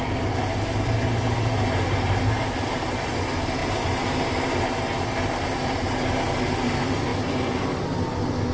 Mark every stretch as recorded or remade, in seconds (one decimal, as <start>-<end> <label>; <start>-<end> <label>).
0.0-8.5 recorded